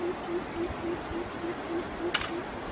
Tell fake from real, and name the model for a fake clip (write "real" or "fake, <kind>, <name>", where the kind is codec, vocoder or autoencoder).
real